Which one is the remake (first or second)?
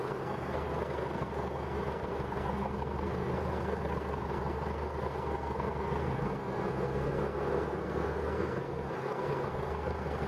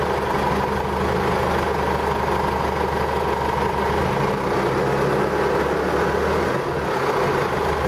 first